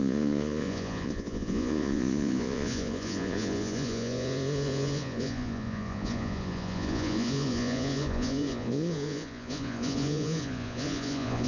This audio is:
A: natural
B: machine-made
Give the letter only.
B